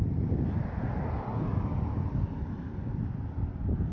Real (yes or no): yes